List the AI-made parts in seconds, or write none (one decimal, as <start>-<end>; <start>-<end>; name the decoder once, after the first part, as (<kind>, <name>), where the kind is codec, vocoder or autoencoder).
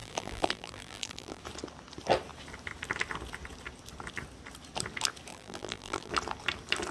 0.0-1.4 (vocoder, BigVGAN v2); 5.3-6.1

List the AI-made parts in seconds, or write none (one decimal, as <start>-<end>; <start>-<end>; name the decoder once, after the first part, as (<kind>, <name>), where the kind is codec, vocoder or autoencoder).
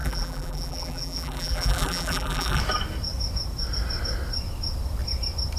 0.0-2.6 (vocoder, BigVGAN v2)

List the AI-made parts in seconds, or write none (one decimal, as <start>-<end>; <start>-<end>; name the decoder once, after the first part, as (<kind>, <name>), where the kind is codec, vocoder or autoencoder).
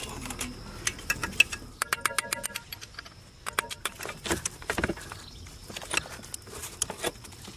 none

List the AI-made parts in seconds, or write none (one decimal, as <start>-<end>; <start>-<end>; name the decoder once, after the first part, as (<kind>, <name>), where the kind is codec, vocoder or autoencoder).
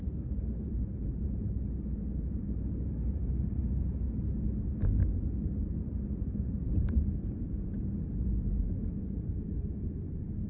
0.0-4.3 (vocoder, BigVGAN v2); 5.6-10.5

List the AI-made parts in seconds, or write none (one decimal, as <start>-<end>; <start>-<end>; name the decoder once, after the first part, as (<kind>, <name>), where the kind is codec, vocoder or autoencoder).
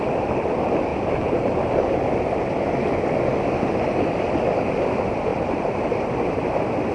0.9-1.5 (vocoder, BigVGAN v2); 5.3-5.8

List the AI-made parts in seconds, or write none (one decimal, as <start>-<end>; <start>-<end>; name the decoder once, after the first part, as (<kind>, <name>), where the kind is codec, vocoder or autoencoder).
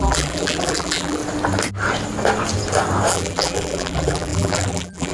0.0-1.2 (vocoder, BigVGAN v2); 3.1-5.1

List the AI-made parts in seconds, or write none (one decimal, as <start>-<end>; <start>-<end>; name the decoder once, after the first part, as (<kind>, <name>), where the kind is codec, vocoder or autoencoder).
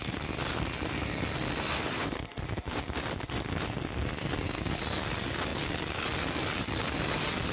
0.0-5.5 (vocoder, BigVGAN v2); 6.6-7.5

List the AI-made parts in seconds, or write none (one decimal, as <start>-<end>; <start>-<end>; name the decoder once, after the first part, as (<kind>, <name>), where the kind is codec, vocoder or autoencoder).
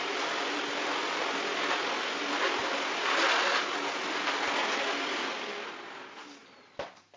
0.0-1.5 (vocoder, BigVGAN v2); 2.2-2.6; 4.9-7.2